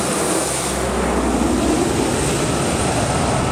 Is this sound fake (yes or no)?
no